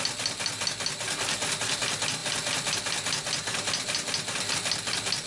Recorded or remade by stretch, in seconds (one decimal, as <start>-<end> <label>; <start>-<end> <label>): 0.0-5.3 recorded